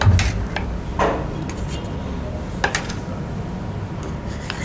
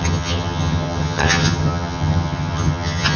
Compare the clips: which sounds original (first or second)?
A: first